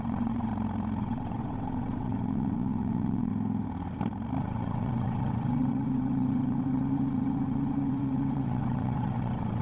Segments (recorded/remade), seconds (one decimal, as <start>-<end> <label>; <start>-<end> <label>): 0.0-0.5 remade; 0.5-1.0 recorded; 1.0-3.3 remade; 3.3-4.4 recorded; 4.4-9.6 remade